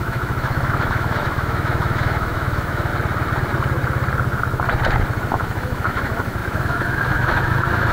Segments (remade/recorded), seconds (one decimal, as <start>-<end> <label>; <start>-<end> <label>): 0.0-2.9 remade; 2.9-5.3 recorded; 5.3-7.9 remade